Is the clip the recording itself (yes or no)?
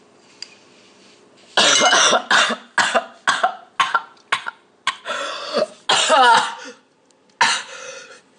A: yes